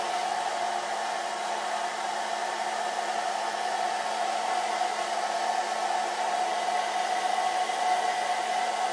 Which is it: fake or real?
real